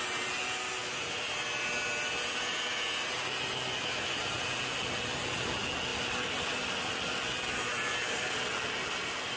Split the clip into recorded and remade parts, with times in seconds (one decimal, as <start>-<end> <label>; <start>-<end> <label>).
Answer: 0.0-9.4 recorded